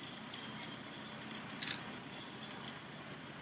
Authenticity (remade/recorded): recorded